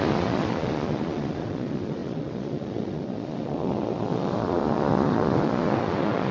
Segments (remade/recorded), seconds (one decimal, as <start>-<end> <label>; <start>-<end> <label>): 0.0-6.3 remade